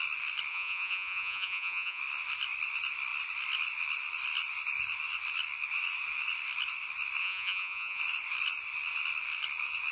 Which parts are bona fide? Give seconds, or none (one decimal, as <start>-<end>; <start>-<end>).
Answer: 0.0-0.5; 2.0-7.2; 8.0-9.9

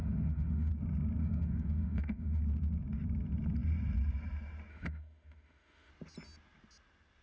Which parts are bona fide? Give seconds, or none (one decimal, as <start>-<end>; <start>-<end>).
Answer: 0.7-1.2; 2.4-4.7; 5.9-7.2

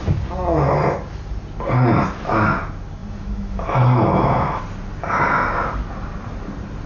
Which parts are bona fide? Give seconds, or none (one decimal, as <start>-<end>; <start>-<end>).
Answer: 0.0-3.0; 4.6-6.9

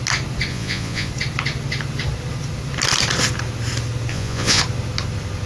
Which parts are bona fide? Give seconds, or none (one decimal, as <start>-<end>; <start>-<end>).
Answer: 0.0-0.5; 1.1-4.1; 4.6-5.5